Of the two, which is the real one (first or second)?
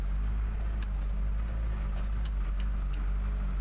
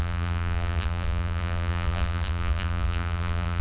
first